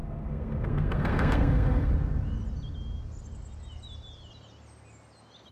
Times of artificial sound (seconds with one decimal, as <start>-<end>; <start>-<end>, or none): 0.0-1.9